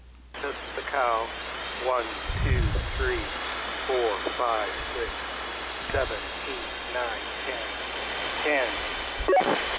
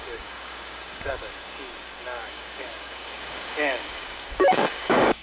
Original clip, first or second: first